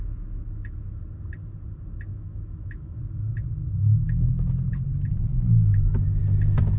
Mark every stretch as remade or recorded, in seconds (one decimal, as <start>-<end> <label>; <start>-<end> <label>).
0.0-2.1 recorded; 2.1-3.0 remade; 3.0-3.6 recorded; 3.6-4.3 remade; 4.3-5.3 recorded; 5.3-6.2 remade; 6.2-6.8 recorded